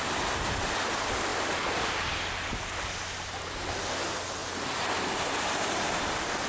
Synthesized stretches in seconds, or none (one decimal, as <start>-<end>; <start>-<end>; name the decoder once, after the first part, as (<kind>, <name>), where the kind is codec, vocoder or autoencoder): none